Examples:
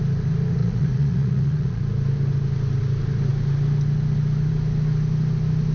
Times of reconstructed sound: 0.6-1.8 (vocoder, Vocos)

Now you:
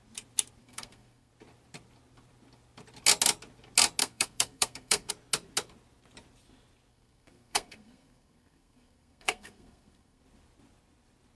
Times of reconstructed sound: 0.6-1.3 (codec, SNAC); 4.0-5.1; 6.9-10.2

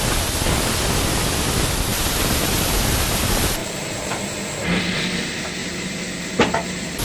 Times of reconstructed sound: 3.6-4.2 (vocoder, BigVGAN v2); 5.6-6.2